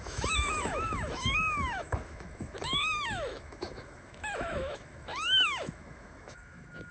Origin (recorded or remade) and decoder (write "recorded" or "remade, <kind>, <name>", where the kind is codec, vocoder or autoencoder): remade, autoencoder, DAC-VAE